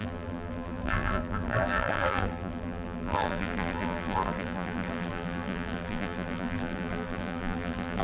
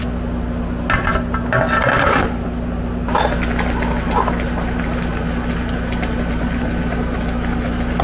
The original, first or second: second